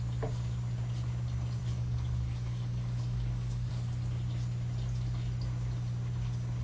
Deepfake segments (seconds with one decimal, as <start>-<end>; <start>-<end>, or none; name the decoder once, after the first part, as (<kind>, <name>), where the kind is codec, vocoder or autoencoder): 1.6-3.7 (codec, DAC)